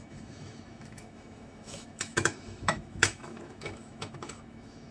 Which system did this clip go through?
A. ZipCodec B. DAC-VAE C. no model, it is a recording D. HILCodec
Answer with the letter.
B